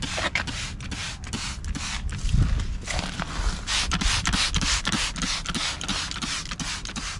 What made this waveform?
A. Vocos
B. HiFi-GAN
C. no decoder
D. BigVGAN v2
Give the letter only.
C